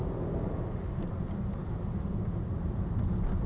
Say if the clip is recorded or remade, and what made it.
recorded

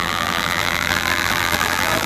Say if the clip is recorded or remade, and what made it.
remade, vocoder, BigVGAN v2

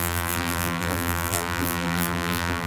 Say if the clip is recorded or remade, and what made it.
remade, vocoder, BigVGAN v2